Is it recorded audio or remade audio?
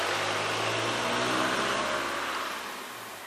recorded